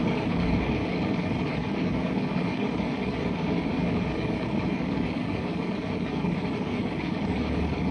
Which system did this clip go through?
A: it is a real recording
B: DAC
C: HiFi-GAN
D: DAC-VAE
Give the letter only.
B